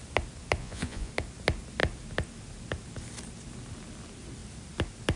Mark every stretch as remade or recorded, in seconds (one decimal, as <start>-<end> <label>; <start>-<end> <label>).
0.0-0.6 recorded; 0.6-1.1 remade; 1.1-5.2 recorded

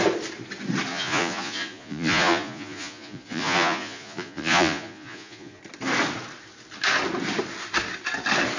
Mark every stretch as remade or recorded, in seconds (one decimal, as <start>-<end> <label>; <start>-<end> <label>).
0.0-0.9 recorded; 0.9-5.6 remade; 5.6-8.6 recorded

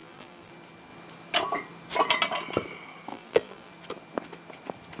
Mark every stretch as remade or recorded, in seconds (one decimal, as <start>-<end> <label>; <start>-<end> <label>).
0.0-0.5 remade; 0.5-3.1 recorded; 3.1-3.7 remade; 3.7-5.0 recorded

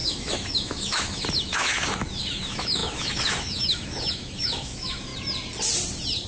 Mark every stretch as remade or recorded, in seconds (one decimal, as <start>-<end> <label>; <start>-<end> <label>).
0.0-5.1 remade; 5.1-6.3 recorded